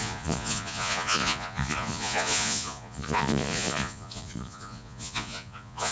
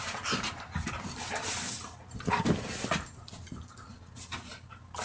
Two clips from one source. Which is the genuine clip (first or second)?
second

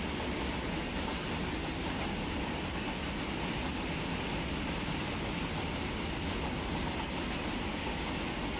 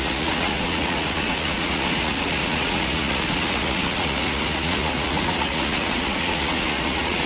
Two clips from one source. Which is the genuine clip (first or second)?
first